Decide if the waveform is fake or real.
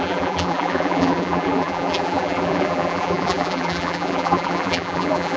fake